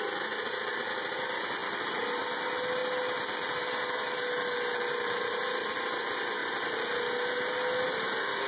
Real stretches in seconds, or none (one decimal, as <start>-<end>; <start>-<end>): 0.0-8.5